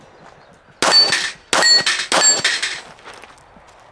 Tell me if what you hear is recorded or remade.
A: recorded